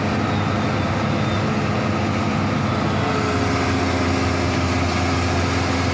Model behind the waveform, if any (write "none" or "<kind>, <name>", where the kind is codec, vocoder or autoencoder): none